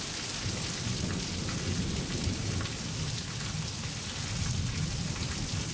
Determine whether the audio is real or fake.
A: real